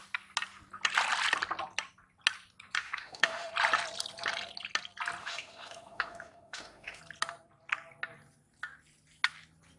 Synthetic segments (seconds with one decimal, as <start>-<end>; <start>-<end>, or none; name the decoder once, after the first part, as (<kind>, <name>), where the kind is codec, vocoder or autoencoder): 2.8-3.5 (autoencoder, DAC-VAE); 5.2-7.0